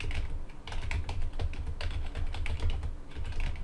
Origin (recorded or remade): recorded